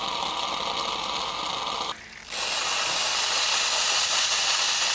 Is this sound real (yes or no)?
yes